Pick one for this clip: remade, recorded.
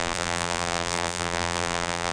remade